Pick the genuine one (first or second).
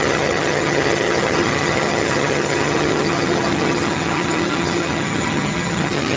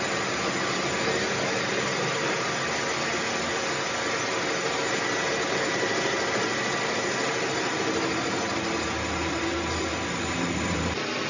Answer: second